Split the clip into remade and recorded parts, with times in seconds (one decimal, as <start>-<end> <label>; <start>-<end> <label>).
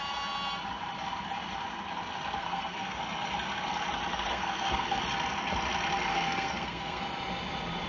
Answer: 0.0-2.4 recorded; 2.4-3.0 remade; 3.0-4.1 recorded; 4.1-5.0 remade; 5.0-6.1 recorded; 6.1-7.0 remade; 7.0-7.9 recorded